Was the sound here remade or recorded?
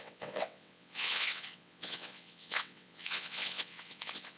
remade